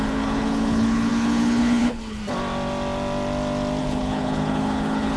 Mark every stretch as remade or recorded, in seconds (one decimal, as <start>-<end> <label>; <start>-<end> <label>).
0.0-2.2 remade; 2.2-3.8 recorded; 3.8-5.2 remade